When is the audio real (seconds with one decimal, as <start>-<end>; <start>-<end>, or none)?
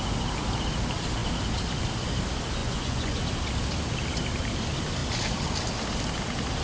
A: 0.0-2.6; 3.2-6.6